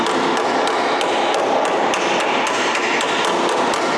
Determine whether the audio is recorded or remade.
recorded